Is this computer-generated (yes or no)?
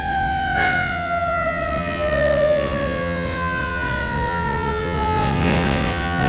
yes